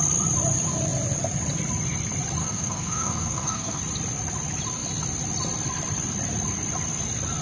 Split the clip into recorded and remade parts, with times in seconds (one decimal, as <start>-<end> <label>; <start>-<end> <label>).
0.0-2.4 recorded; 2.4-3.8 remade; 3.8-7.4 recorded